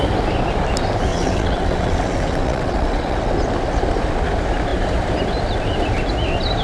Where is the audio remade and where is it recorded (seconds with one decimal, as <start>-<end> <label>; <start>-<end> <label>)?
0.0-1.1 recorded; 1.1-3.3 remade; 3.3-6.6 recorded